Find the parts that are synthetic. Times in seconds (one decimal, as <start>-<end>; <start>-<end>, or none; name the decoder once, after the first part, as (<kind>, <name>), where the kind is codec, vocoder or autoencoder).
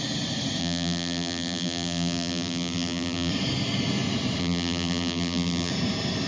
0.6-3.3 (vocoder, BigVGAN v2); 4.4-5.7